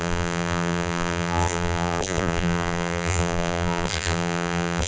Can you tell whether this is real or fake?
fake